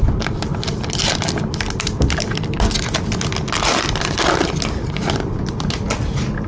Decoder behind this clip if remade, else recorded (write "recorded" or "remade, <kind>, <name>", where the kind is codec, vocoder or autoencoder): recorded